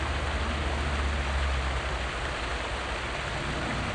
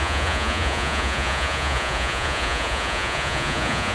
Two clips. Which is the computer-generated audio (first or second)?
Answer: second